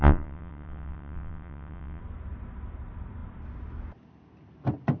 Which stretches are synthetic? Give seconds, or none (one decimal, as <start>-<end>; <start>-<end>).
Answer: 0.0-2.0

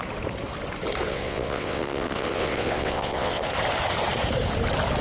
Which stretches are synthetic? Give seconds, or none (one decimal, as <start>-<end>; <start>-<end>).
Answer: 1.1-3.4

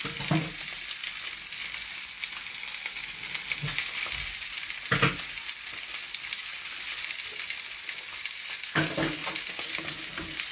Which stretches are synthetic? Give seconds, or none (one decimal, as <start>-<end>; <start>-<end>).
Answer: none

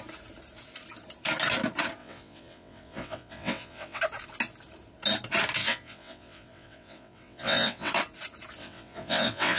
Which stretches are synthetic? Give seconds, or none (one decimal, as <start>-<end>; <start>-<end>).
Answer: 2.0-4.0; 5.6-7.9; 8.6-9.6